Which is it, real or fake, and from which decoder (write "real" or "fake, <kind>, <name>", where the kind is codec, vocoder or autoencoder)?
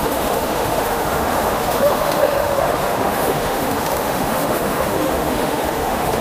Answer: fake, autoencoder, DAC-VAE